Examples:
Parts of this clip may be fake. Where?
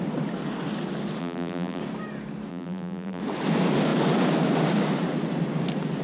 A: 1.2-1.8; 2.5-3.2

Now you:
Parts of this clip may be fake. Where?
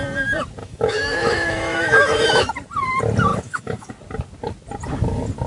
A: 0.6-2.5; 3.3-3.9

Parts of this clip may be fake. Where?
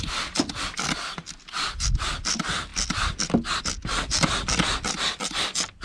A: none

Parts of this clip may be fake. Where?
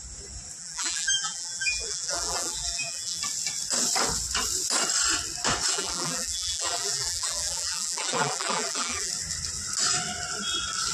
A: 0.6-3.2; 5.7-9.1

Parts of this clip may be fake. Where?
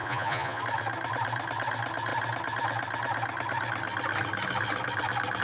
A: 0.0-0.6